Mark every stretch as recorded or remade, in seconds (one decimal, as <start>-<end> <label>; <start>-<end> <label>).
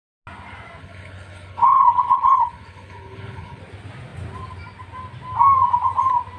0.0-0.8 recorded; 0.8-3.6 remade; 3.6-6.4 recorded